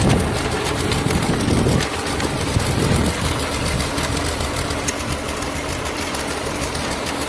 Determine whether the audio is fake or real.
real